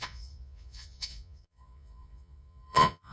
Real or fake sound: fake